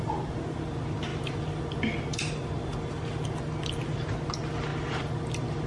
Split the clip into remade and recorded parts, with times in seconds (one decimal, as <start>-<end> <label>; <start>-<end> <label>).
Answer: 0.0-1.1 recorded; 1.1-1.6 remade; 1.6-2.1 recorded; 2.1-4.3 remade; 4.3-5.7 recorded